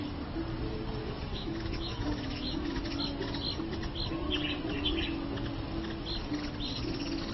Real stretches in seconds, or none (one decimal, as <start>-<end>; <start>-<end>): 0.0-1.0; 3.0-7.3

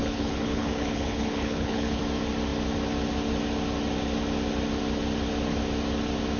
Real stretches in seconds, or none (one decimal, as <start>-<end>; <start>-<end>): 2.0-6.4

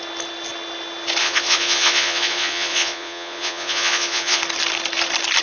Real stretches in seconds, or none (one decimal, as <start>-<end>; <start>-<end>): 0.0-1.2; 4.4-5.4

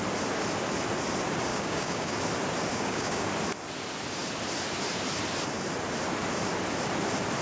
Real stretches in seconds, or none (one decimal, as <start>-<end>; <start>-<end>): 0.0-1.5; 2.2-2.7; 3.3-7.4

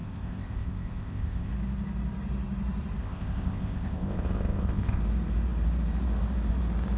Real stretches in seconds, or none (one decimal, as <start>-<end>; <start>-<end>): 1.5-3.0; 5.0-7.0

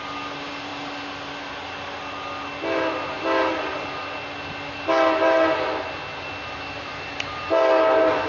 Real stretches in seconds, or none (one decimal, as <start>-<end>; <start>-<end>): 0.0-8.3

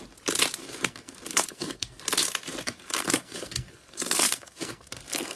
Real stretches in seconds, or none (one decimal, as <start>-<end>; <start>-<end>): 0.0-0.6; 2.0-2.6